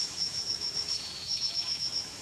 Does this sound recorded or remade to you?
remade